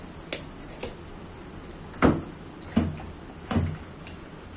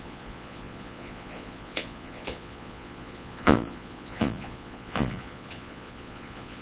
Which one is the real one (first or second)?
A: first